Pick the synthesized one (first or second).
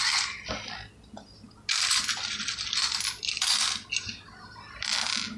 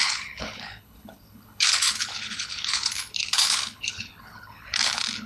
second